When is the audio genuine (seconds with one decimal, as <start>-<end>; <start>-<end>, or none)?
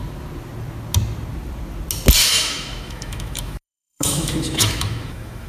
0.0-2.2